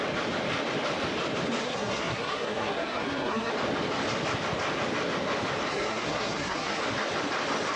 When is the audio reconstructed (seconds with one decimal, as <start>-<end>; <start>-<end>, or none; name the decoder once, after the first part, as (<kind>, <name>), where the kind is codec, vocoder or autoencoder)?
1.6-3.5 (codec, SNAC); 5.7-6.8